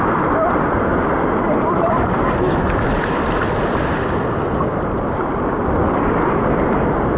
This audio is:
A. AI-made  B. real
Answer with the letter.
B